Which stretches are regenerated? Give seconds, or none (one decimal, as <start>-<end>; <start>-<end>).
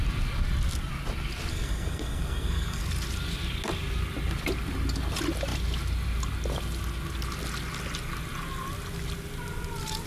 1.5-2.8